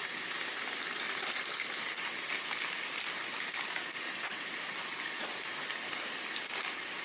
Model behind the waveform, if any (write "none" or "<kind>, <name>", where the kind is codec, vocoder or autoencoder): vocoder, BigVGAN v2